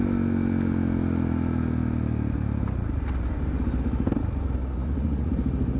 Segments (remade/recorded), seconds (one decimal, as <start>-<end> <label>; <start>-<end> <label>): 0.0-4.6 recorded; 4.6-5.3 remade; 5.3-5.8 recorded